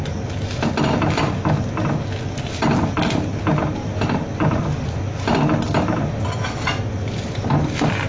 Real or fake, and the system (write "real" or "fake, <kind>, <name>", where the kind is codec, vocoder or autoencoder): real